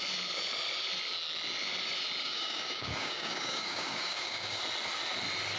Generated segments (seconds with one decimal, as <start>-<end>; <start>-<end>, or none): 2.2-4.6